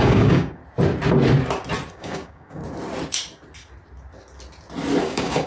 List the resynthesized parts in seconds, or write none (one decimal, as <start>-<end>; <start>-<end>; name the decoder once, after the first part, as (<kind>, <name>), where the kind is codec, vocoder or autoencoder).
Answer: 0.0-0.6 (codec, DAC); 1.9-2.6; 5.0-5.5